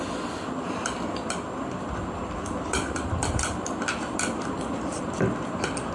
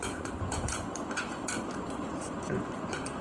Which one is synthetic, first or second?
second